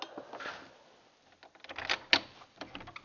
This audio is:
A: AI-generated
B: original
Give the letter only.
B